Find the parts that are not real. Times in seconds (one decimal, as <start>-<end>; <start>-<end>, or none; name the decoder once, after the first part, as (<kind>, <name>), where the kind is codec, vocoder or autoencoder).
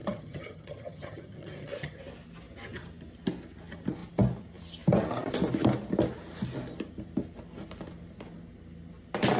0.0-2.0 (vocoder, HiFi-GAN)